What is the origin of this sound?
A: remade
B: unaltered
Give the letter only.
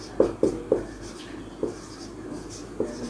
B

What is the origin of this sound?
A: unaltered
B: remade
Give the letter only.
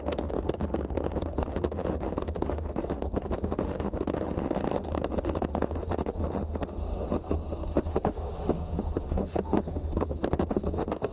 B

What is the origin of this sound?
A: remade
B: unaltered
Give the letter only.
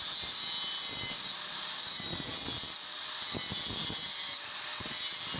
B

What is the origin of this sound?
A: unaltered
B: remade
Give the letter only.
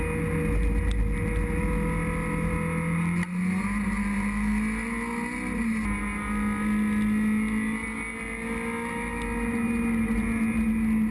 A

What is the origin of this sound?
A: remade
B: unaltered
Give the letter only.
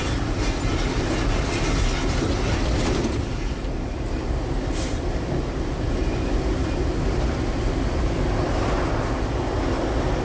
B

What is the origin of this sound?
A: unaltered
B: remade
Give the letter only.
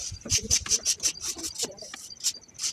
A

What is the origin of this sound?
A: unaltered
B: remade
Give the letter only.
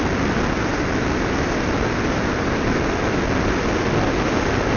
A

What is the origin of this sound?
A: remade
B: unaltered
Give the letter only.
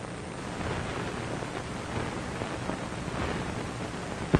B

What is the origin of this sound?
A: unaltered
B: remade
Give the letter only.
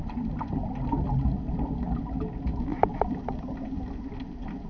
A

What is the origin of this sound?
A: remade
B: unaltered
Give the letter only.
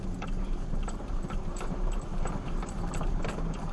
A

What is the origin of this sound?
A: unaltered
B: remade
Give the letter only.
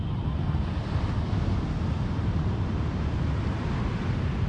A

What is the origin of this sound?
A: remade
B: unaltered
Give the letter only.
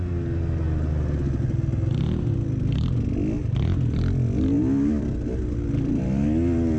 B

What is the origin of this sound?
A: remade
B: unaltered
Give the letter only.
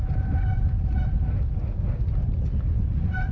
B